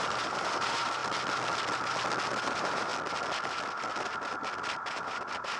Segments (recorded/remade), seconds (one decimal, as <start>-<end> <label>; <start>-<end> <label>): 0.0-1.0 remade; 1.0-2.4 recorded; 2.4-2.9 remade; 2.9-5.0 recorded; 5.0-5.6 remade